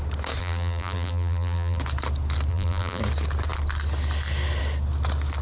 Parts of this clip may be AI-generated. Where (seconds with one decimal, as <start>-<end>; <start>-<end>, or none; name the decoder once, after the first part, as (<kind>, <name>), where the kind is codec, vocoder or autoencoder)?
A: 0.4-1.8 (vocoder, BigVGAN v2); 2.5-3.0